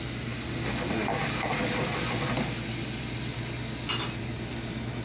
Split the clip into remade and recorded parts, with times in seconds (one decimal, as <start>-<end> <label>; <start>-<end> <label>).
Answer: 0.0-5.0 recorded